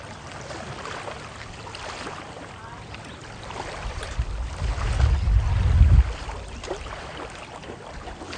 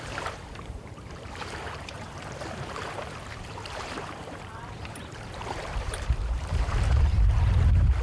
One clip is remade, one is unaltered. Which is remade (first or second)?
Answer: second